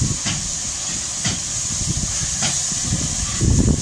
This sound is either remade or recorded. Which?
recorded